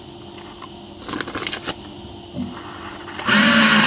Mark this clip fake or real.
real